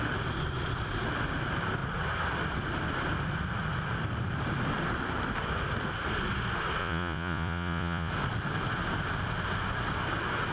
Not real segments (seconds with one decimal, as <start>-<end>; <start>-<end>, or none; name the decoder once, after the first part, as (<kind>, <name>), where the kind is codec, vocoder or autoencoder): 6.8-8.1 (vocoder, Vocos)